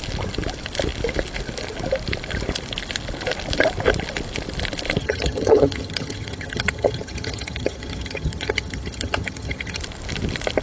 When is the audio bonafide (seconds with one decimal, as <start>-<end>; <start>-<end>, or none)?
0.0-5.0; 9.8-10.6